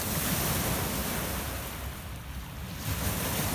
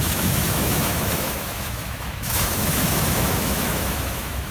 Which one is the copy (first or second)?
second